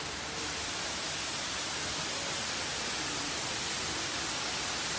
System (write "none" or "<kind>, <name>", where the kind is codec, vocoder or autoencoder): none